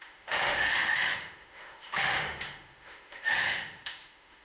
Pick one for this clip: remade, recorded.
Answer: remade